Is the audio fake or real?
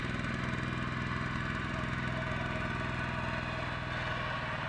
real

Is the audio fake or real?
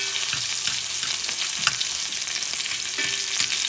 real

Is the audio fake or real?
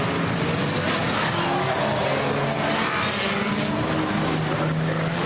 real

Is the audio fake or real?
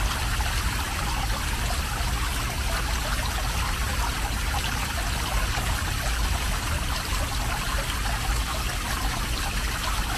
real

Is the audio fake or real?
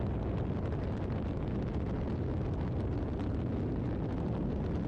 real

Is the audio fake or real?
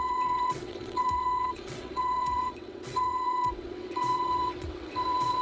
fake